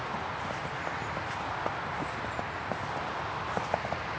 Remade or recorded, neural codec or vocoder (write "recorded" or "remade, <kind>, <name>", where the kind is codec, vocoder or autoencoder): recorded